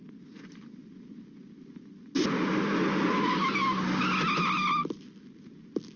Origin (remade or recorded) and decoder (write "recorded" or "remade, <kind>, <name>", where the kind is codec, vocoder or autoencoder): recorded